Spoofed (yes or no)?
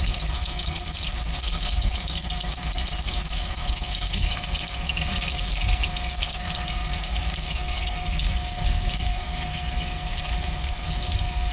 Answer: yes